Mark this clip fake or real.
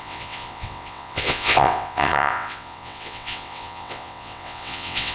fake